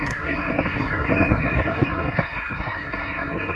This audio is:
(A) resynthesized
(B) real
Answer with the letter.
A